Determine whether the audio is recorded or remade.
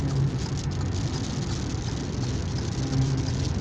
recorded